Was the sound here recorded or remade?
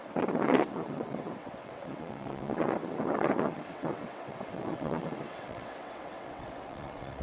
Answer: remade